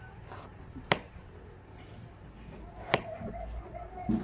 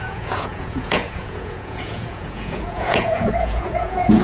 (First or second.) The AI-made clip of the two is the second